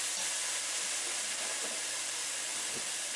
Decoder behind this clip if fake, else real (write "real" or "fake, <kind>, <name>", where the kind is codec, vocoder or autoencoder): real